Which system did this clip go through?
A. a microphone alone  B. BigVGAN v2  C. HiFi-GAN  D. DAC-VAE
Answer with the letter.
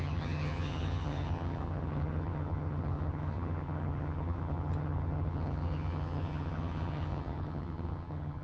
C